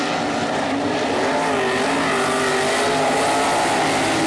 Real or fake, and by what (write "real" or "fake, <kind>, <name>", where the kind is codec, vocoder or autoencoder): real